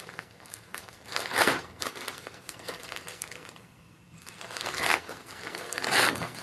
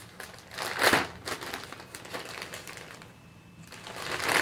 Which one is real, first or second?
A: second